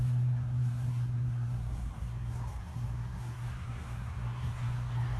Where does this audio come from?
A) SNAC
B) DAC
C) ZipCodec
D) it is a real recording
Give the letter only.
A